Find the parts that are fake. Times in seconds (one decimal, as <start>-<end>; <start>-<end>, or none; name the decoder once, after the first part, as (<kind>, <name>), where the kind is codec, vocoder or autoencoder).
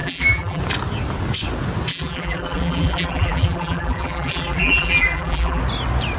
0.0-0.6 (vocoder, BigVGAN v2); 1.9-5.6